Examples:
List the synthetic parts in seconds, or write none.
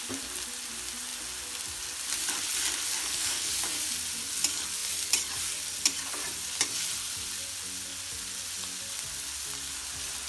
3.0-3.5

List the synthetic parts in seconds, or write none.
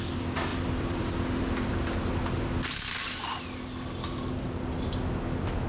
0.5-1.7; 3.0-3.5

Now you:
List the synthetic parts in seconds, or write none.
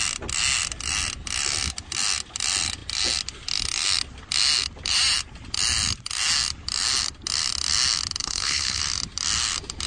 8.2-8.8